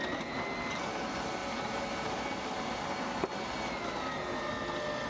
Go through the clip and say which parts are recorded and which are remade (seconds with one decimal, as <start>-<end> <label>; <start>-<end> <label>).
0.0-5.1 recorded